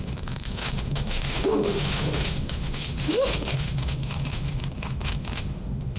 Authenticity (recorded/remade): remade